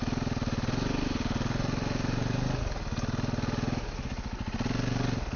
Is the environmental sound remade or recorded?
recorded